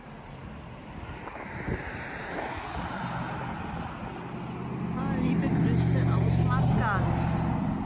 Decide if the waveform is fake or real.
real